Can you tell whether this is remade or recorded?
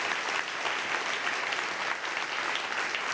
recorded